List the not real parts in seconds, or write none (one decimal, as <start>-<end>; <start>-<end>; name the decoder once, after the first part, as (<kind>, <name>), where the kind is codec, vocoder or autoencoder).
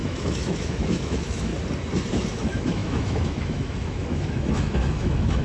0.0-1.5 (autoencoder, DAC-VAE); 2.1-5.4